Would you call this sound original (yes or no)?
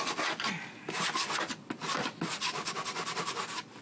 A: yes